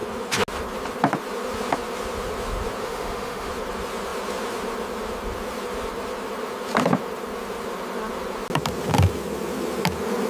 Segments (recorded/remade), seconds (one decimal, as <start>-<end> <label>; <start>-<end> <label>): 0.0-2.8 recorded; 2.8-3.5 remade; 3.5-10.3 recorded